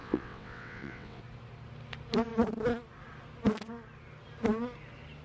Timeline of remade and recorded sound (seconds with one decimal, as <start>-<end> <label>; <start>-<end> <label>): 0.0-1.2 remade; 1.2-5.2 recorded